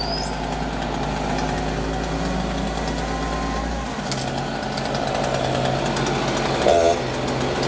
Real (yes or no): yes